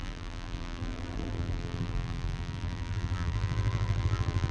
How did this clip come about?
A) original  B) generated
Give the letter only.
B